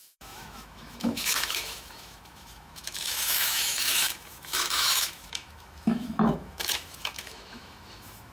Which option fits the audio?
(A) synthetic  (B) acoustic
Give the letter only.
A